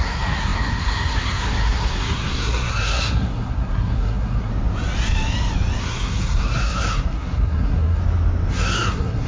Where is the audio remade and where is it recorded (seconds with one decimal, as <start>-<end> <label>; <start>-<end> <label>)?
0.0-4.5 remade; 4.5-5.8 recorded; 5.8-8.0 remade; 8.0-8.5 recorded; 8.5-9.3 remade